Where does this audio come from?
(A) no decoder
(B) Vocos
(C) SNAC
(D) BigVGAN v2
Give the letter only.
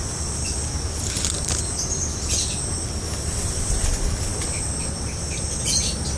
A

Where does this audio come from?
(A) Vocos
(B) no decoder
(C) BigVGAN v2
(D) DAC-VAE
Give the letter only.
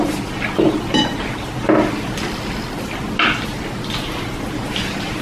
B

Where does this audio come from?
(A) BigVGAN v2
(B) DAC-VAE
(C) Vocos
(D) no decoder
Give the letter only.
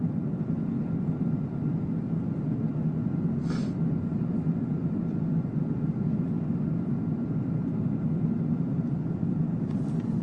D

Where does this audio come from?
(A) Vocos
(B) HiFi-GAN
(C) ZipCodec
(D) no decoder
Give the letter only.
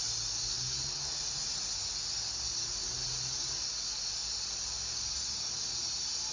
D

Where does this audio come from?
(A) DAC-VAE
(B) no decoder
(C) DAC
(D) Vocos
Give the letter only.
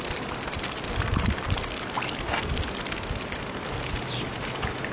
B